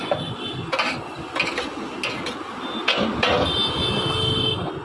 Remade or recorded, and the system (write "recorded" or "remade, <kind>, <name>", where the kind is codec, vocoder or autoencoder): recorded